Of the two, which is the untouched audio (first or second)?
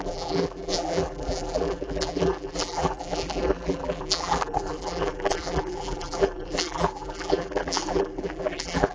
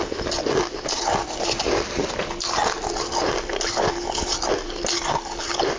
second